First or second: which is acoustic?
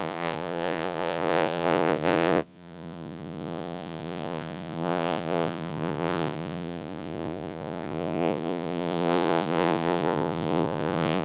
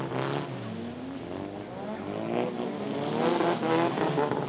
second